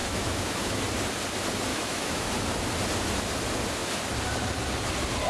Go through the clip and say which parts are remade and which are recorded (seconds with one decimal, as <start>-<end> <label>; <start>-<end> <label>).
0.0-0.8 remade; 0.8-1.7 recorded; 1.7-2.3 remade; 2.3-5.3 recorded

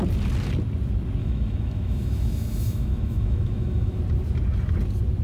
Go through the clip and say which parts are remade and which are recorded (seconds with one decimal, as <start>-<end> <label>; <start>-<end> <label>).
0.0-1.2 recorded; 1.2-4.0 remade; 4.0-5.2 recorded

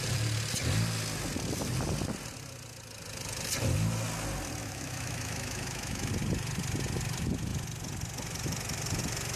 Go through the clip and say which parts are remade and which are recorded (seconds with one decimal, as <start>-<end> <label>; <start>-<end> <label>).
0.0-4.6 recorded; 4.6-6.1 remade; 6.1-9.4 recorded

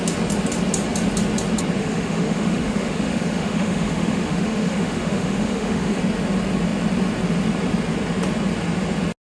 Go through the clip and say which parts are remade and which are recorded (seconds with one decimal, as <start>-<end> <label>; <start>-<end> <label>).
0.0-1.8 recorded; 1.8-6.0 remade; 6.0-9.4 recorded

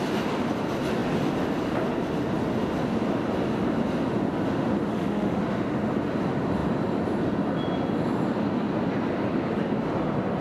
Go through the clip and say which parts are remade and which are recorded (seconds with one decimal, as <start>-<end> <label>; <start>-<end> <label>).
0.0-4.9 recorded; 4.9-5.4 remade; 5.4-10.4 recorded

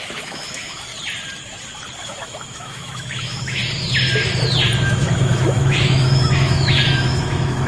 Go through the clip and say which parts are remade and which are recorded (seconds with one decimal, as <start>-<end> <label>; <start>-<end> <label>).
0.0-0.9 remade; 0.9-2.0 recorded; 2.0-3.6 remade; 3.6-4.8 recorded; 4.8-7.7 remade